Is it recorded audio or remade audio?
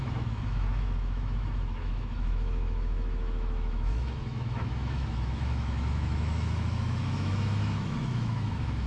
remade